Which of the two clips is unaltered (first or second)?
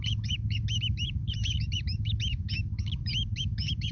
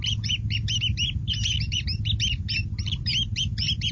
second